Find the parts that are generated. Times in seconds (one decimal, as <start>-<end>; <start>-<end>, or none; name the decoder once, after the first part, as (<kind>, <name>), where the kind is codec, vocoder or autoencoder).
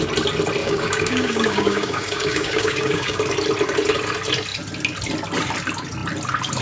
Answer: 0.6-3.2 (codec, DAC)